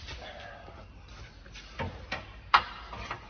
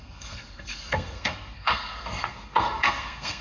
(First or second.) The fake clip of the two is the second